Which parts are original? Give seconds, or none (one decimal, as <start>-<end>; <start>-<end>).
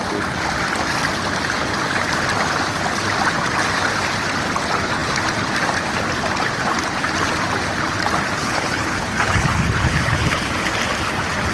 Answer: 0.0-8.4; 10.5-11.5